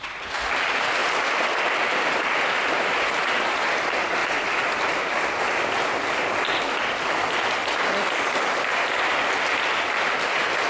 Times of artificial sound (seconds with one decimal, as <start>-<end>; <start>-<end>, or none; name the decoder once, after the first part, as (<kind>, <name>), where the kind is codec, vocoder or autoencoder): 1.0-2.3 (vocoder, BigVGAN v2); 4.2-5.0; 7.6-8.2